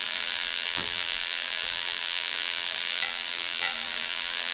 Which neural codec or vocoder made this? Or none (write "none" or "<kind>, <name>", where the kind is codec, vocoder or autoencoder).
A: vocoder, BigVGAN v2